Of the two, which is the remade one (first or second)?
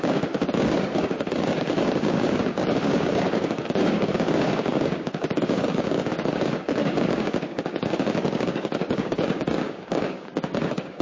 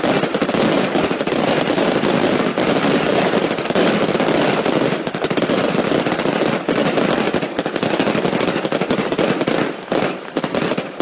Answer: first